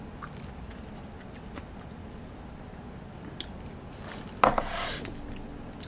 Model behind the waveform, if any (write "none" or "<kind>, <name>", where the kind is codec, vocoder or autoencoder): none